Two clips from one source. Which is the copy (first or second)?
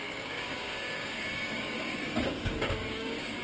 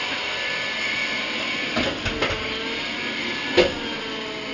first